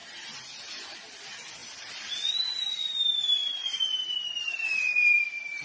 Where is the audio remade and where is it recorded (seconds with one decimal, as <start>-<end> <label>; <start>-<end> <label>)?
0.0-0.7 recorded; 0.7-3.4 remade; 3.4-4.4 recorded; 4.4-5.6 remade